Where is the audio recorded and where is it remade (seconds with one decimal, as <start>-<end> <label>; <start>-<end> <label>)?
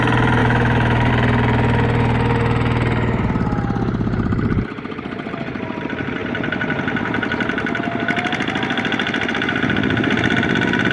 0.0-0.4 recorded; 0.4-1.1 remade; 1.1-10.9 recorded